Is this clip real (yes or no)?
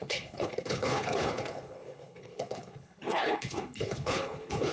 no